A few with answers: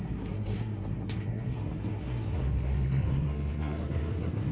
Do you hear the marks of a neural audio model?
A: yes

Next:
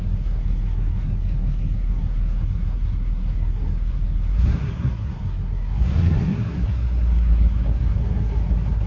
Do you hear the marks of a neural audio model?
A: yes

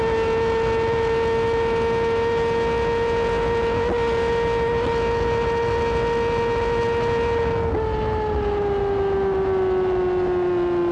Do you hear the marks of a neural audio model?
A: no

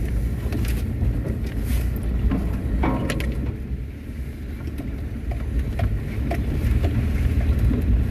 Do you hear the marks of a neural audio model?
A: no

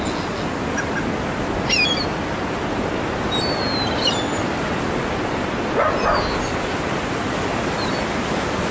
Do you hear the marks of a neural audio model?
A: no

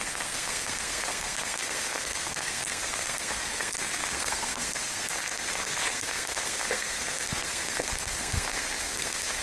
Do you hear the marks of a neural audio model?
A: yes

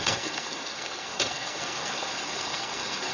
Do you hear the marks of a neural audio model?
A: yes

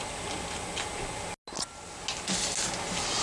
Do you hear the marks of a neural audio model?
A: no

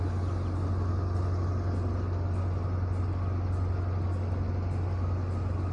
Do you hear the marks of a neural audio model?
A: no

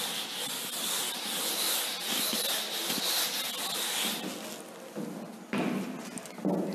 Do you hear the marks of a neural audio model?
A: no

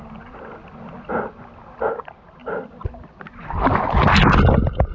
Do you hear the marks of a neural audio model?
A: no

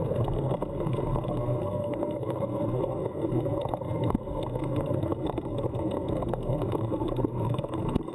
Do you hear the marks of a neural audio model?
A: yes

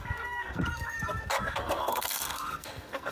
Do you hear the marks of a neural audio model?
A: yes